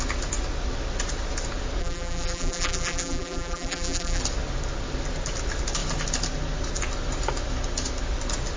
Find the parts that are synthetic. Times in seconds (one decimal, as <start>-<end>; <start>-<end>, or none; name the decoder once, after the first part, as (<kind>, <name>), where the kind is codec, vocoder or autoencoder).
1.8-4.2 (vocoder, BigVGAN v2)